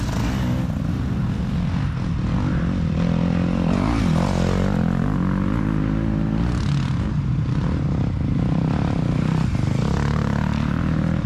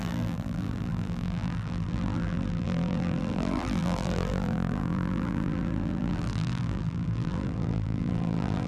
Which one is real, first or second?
first